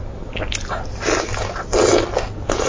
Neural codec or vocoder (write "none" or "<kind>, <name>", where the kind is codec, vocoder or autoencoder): none